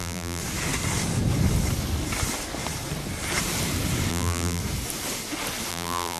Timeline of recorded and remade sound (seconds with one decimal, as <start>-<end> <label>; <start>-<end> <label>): 0.0-0.4 remade; 0.4-4.1 recorded; 4.1-4.6 remade; 4.6-5.7 recorded; 5.7-6.2 remade